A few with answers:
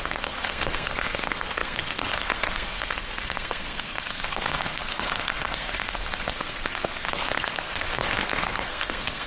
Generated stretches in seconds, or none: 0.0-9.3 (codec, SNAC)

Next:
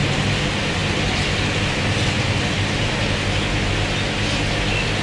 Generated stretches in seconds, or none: none

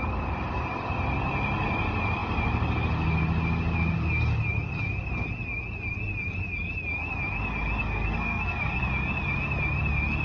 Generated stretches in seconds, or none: 7.8-8.8 (codec, SNAC)

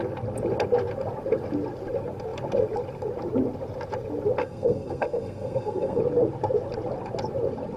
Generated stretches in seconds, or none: 4.4-6.0 (codec, SNAC)